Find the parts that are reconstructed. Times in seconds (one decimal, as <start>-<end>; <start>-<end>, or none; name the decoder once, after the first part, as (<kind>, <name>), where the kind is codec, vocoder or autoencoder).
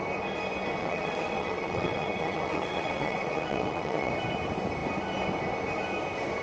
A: 0.8-4.1 (vocoder, WaveNeXt)